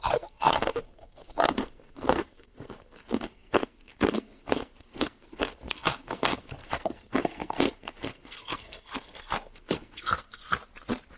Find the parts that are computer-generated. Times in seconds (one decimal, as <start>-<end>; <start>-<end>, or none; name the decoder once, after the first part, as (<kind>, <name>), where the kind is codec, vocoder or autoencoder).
0.0-10.4 (codec, SNAC)